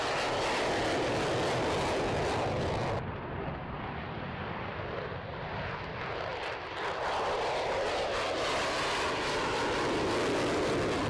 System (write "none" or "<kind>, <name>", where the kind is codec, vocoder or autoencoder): none